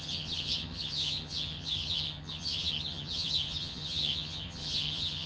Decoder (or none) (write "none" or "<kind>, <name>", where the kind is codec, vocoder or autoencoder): vocoder, HiFi-GAN